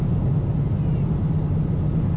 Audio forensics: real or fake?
real